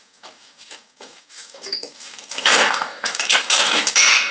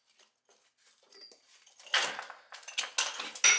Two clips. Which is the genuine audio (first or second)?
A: second